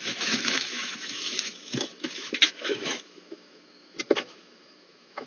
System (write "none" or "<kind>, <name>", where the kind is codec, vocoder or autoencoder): autoencoder, DAC-VAE